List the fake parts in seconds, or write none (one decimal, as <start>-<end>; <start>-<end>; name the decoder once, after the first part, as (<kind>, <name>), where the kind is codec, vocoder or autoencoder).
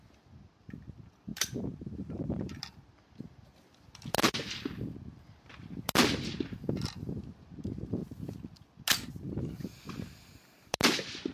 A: 1.3-2.6 (vocoder, BigVGAN v2)